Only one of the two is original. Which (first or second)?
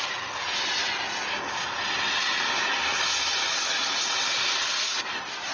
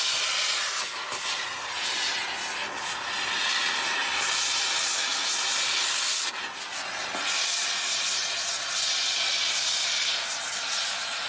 second